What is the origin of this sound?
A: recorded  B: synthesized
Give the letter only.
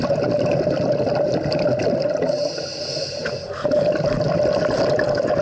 A